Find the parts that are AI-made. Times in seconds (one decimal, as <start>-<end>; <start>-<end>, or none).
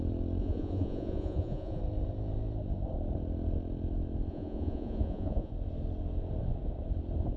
0.4-1.8; 4.3-5.5